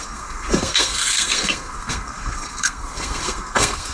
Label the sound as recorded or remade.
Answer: remade